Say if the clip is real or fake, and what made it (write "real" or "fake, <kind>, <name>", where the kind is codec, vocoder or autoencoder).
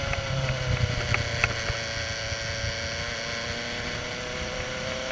real